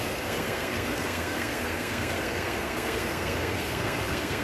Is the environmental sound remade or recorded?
remade